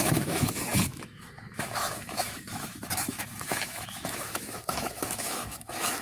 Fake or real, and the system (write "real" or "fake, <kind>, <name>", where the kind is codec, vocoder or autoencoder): fake, autoencoder, DAC-VAE